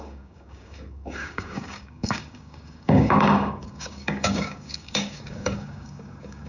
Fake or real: fake